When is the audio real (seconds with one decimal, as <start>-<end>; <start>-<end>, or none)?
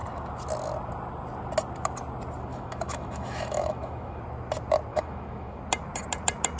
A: 0.0-2.5; 4.2-4.9; 5.6-6.6